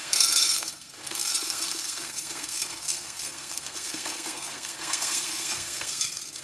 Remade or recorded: remade